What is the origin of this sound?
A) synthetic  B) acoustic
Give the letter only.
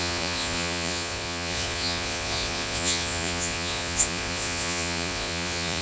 A